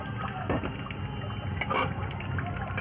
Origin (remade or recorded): recorded